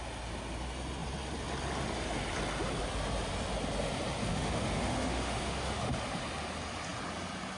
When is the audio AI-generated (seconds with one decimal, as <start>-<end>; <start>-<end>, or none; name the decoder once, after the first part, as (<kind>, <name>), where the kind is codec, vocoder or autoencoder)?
4.3-5.8 (autoencoder, DAC-VAE)